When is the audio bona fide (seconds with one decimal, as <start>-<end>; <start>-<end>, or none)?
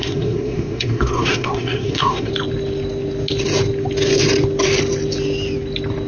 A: 2.3-6.1